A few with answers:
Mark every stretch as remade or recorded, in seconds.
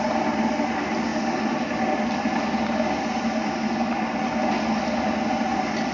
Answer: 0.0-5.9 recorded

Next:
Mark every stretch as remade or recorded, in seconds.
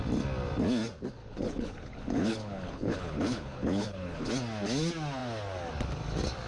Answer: 0.0-1.2 recorded; 1.2-4.3 remade; 4.3-6.5 recorded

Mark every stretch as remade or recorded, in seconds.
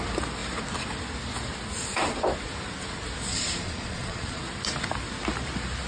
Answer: 0.0-3.3 recorded; 3.3-4.4 remade; 4.4-5.9 recorded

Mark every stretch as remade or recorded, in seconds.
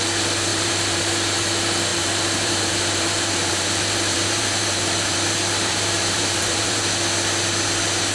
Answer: 0.0-0.5 recorded; 0.5-1.1 remade; 1.1-1.9 recorded; 1.9-6.8 remade; 6.8-8.1 recorded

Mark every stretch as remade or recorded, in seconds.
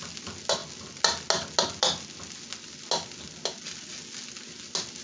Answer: 0.0-5.0 recorded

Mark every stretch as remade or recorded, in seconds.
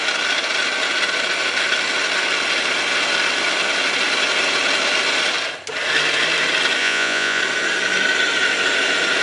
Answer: 0.0-6.8 recorded; 6.8-7.4 remade; 7.4-9.2 recorded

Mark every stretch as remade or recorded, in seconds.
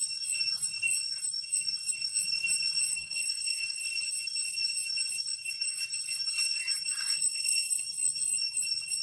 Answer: 0.0-2.9 recorded; 2.9-3.8 remade; 3.8-7.0 recorded; 7.0-7.8 remade; 7.8-9.0 recorded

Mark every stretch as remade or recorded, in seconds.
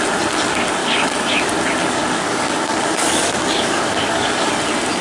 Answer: 0.0-0.8 recorded; 0.8-1.3 remade; 1.3-1.8 recorded; 1.8-4.5 remade; 4.5-5.0 recorded